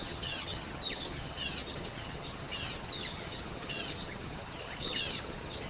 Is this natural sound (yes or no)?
no